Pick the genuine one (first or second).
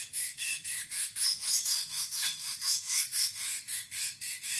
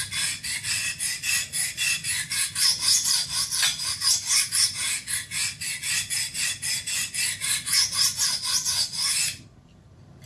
second